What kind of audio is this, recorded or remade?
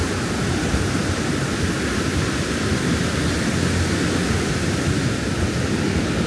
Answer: recorded